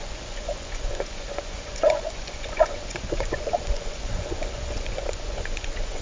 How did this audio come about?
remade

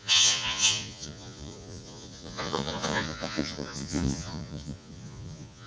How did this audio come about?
remade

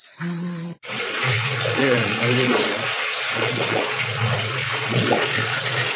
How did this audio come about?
remade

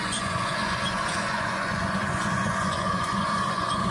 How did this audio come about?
remade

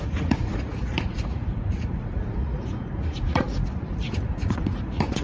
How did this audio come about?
remade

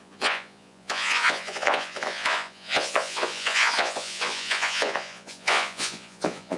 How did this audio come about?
remade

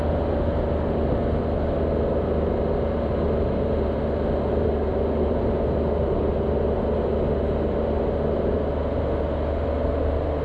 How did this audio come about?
recorded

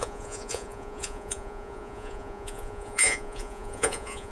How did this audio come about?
remade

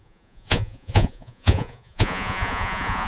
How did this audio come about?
remade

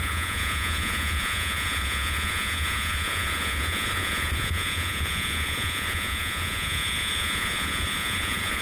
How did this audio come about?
remade